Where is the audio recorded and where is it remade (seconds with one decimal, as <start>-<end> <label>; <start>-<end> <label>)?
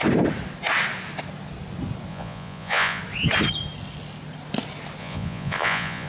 0.0-2.1 recorded; 2.1-3.0 remade; 3.0-5.0 recorded; 5.0-6.1 remade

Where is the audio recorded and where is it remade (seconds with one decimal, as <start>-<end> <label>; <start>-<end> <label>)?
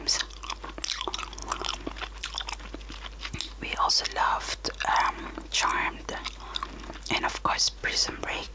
0.0-7.8 recorded; 7.8-8.5 remade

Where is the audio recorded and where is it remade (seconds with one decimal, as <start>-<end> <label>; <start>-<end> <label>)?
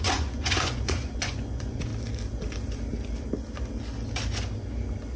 0.0-1.9 remade; 1.9-5.2 recorded